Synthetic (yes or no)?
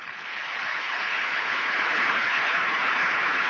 yes